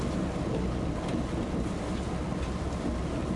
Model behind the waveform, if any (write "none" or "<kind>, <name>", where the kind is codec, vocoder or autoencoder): none